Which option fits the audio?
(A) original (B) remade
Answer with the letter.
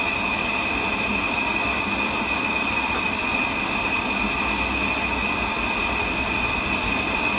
A